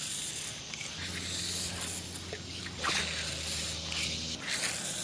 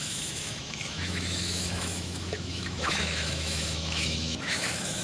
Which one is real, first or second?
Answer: first